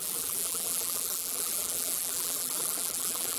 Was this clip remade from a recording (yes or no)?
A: yes